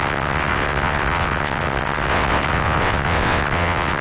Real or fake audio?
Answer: fake